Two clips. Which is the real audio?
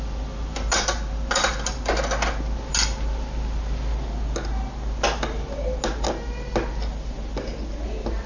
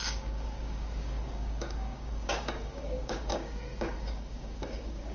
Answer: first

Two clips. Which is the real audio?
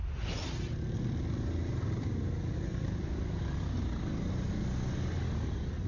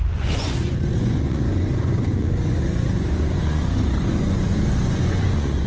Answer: first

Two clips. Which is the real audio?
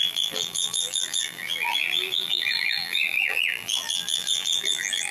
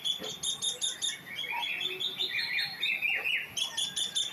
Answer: second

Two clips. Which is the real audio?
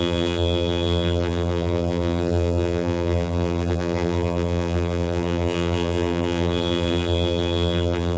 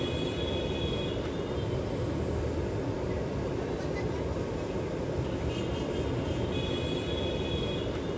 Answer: second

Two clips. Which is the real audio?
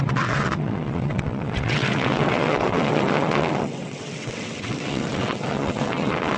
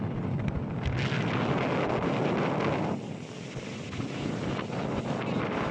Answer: second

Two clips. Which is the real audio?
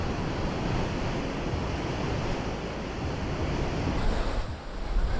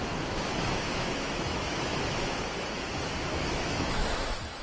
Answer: first